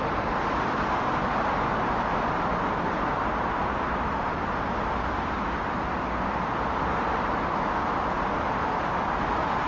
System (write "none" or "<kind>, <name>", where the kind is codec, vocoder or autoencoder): none